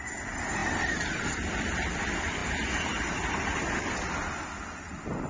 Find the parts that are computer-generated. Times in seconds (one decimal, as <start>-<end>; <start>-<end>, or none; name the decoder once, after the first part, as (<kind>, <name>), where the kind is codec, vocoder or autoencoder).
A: none